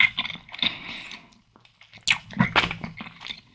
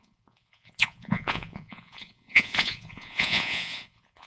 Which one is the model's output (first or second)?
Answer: second